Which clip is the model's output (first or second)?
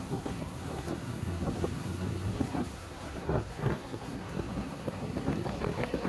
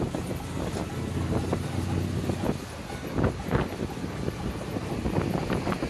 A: first